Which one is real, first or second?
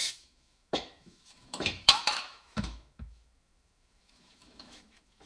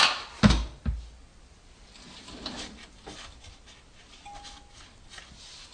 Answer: second